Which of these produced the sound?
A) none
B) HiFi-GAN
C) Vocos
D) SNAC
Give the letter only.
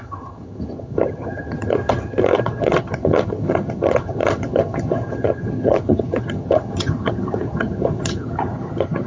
B